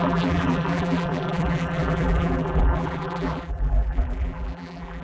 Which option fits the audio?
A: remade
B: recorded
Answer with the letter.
A